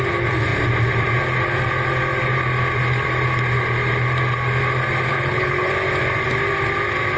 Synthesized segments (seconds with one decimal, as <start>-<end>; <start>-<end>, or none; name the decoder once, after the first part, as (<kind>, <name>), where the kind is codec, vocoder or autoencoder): 5.1-5.7 (codec, HILCodec)